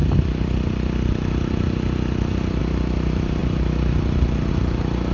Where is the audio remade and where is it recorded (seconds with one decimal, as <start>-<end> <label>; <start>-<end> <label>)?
0.0-5.1 recorded